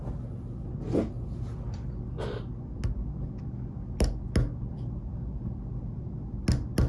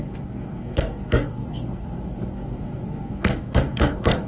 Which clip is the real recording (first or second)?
first